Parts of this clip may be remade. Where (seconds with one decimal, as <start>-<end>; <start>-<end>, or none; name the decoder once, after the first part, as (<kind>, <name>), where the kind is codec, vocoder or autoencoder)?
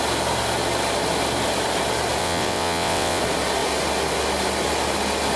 2.2-3.2 (vocoder, WaveNeXt)